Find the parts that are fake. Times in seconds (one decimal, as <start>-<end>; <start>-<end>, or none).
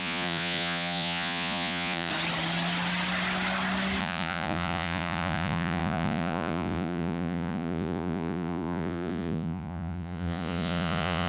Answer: 0.0-2.1; 4.0-11.3